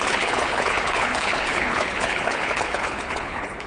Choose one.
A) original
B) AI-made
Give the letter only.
B